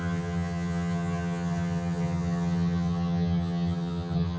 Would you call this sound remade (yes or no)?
yes